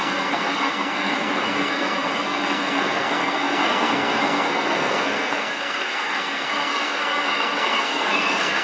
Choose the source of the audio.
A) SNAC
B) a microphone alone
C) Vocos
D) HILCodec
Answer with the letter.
A